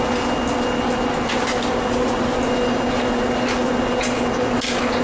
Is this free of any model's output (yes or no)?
yes